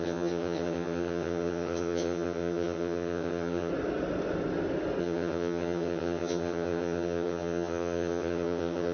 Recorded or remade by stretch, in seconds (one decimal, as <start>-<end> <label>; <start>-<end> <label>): 0.0-3.7 remade; 3.7-5.0 recorded; 5.0-8.9 remade